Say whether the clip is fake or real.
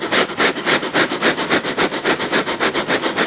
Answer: real